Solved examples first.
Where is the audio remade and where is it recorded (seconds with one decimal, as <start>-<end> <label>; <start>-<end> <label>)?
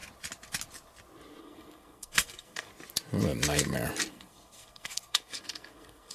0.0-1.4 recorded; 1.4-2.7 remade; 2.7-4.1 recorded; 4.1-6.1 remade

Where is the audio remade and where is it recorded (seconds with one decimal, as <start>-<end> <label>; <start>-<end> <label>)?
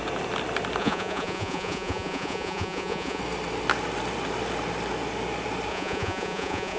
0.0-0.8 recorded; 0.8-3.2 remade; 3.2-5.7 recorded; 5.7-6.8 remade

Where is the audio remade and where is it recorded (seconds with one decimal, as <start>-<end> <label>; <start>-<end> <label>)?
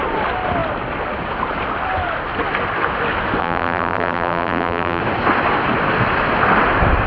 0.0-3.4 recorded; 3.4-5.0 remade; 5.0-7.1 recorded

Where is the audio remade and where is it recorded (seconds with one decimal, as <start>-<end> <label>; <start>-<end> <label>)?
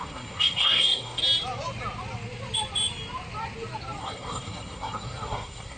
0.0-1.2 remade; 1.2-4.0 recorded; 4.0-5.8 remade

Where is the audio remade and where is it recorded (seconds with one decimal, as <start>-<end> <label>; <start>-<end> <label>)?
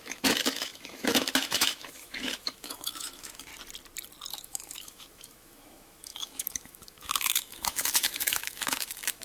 0.0-3.5 remade; 3.5-4.3 recorded; 4.3-9.2 remade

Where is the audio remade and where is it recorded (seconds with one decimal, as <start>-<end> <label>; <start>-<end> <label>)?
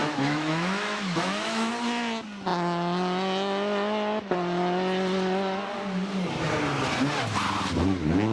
0.0-1.7 remade; 1.7-8.3 recorded